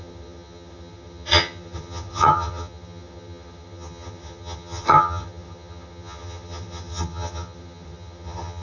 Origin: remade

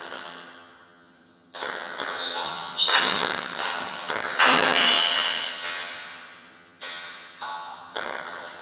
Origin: remade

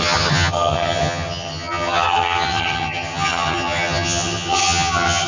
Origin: remade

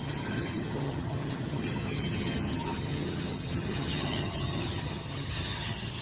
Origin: remade